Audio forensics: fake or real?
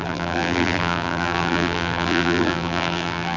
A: fake